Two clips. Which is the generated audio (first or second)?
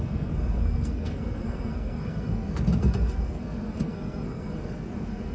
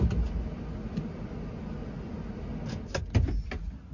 first